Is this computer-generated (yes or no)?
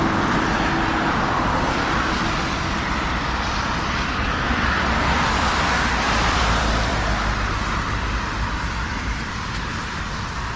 yes